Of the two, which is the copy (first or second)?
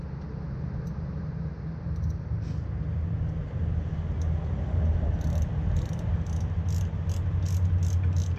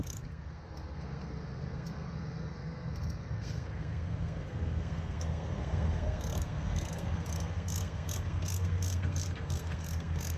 second